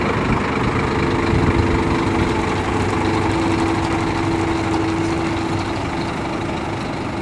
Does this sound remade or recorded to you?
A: recorded